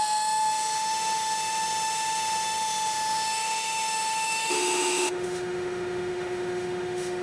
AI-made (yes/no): yes